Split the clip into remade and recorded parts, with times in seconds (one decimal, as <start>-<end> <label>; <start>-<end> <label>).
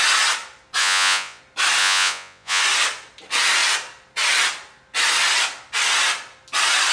0.0-0.8 recorded; 0.8-1.4 remade; 1.4-1.8 recorded; 1.8-2.6 remade; 2.6-6.9 recorded